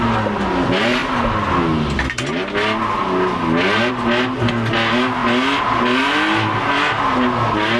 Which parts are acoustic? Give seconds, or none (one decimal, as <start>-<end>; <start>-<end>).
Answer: 0.0-7.8